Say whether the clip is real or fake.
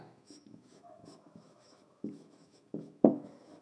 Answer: fake